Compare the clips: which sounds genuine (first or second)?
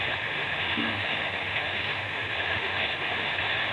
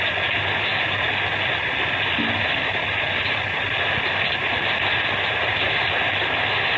second